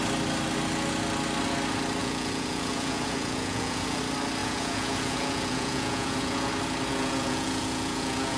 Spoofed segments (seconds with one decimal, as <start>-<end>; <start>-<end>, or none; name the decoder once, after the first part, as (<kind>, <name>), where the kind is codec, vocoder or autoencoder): 2.0-4.0 (vocoder, Vocos); 4.4-6.5; 6.9-8.4